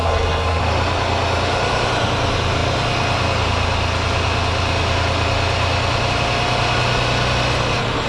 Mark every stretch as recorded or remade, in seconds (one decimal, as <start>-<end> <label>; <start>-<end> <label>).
0.0-0.6 remade; 0.6-8.1 recorded